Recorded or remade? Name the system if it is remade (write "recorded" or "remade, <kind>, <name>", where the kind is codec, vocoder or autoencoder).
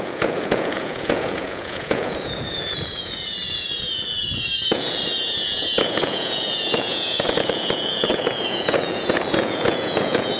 remade, vocoder, Vocos